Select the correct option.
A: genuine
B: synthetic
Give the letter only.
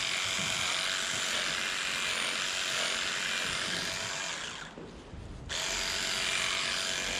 A